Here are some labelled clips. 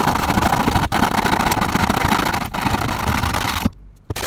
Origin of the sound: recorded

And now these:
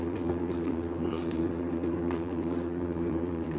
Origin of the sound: remade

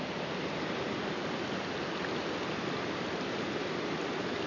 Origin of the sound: recorded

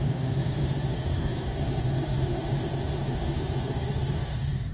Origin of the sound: remade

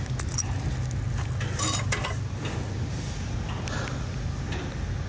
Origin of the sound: recorded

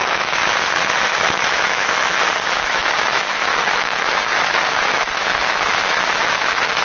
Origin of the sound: remade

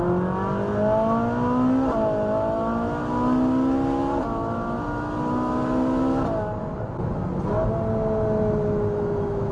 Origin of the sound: recorded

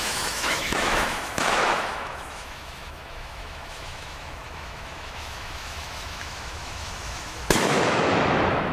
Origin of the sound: remade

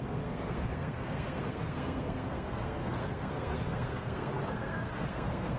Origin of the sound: remade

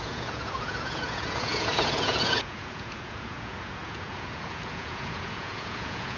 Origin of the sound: remade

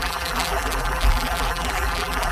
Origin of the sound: remade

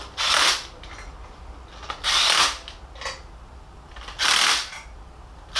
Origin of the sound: recorded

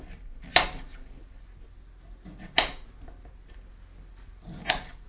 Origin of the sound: recorded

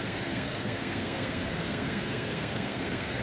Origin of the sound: remade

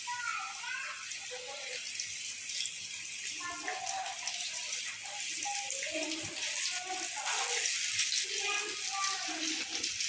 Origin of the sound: recorded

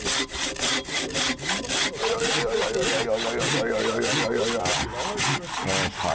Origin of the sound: recorded